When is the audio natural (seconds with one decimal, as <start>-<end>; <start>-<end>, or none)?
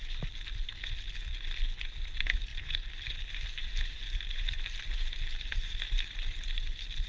0.0-2.5